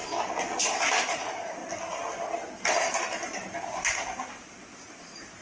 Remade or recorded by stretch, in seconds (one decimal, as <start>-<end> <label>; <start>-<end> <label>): 0.0-1.1 recorded; 1.1-1.6 remade; 1.6-4.8 recorded; 4.8-5.4 remade